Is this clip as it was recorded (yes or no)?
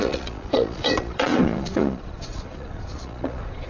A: no